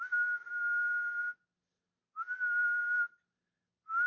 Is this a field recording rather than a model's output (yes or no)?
yes